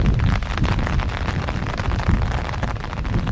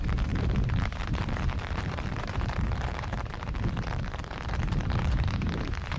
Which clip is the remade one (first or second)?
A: second